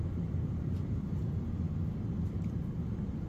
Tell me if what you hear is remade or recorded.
remade